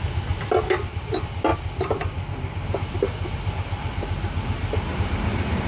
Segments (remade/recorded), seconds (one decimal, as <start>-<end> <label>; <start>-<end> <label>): 0.0-5.7 remade